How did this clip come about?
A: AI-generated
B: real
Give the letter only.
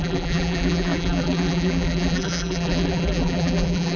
A